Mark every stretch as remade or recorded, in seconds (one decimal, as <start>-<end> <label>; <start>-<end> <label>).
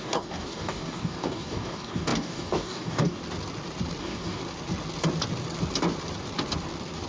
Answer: 0.0-3.2 remade; 3.2-4.0 recorded; 4.0-4.4 remade; 4.4-7.1 recorded